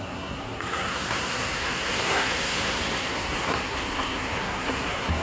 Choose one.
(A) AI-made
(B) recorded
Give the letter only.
A